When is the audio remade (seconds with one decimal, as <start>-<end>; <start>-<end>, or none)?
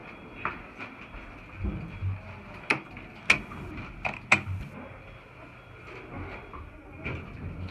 none